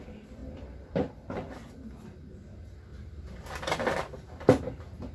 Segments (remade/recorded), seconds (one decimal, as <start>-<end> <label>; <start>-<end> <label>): 0.0-0.4 recorded; 0.4-1.1 remade; 1.1-2.9 recorded; 2.9-4.0 remade; 4.0-5.1 recorded